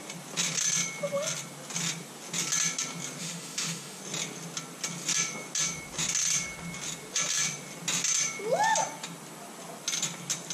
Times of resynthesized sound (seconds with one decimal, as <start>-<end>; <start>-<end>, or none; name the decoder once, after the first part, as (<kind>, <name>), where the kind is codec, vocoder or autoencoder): 3.2-4.0 (autoencoder, DAC-VAE)